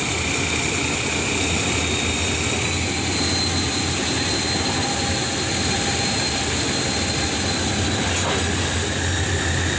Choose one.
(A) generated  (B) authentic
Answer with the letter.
B